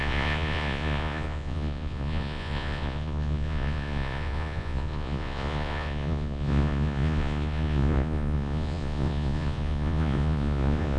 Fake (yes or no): yes